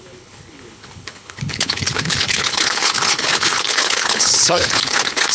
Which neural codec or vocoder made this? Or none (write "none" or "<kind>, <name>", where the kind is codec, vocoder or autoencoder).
codec, HILCodec